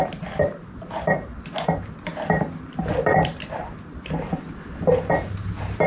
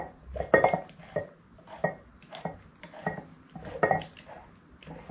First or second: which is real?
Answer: second